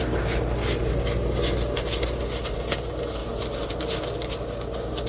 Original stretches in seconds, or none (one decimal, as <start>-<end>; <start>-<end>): 0.0-5.1